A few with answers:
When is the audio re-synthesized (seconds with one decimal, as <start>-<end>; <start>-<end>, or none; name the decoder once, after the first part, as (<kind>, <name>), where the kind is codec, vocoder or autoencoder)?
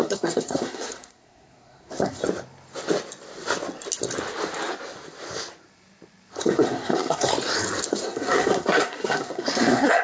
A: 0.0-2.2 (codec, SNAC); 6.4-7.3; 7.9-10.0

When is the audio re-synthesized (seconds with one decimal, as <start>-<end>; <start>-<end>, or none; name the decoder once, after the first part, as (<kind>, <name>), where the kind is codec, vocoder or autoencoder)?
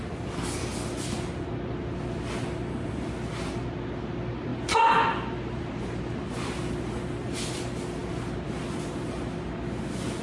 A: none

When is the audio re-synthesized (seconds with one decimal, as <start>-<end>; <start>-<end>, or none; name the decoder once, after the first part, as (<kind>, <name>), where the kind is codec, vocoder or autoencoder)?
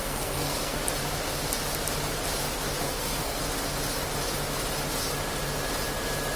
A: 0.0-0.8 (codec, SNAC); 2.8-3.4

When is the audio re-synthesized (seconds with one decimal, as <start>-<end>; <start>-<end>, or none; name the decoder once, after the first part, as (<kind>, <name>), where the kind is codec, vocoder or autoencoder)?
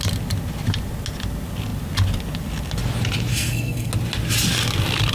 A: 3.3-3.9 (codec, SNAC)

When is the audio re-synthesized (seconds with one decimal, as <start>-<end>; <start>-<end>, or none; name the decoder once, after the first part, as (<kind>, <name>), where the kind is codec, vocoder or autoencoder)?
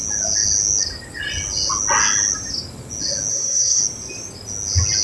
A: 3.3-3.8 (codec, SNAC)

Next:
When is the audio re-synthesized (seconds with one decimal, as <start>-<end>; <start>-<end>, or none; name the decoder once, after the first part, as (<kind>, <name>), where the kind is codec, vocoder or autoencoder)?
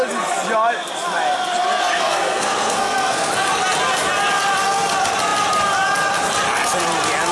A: 1.8-3.3 (codec, SNAC)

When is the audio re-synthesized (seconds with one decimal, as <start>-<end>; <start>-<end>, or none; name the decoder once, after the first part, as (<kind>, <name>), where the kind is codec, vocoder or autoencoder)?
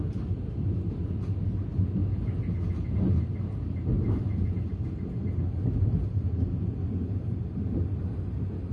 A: none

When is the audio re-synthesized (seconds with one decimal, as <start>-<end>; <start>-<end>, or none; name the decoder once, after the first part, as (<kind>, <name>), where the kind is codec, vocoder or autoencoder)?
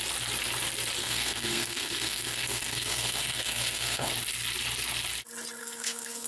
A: 1.0-4.1 (codec, SNAC); 5.6-6.3